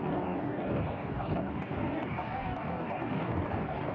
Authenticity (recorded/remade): remade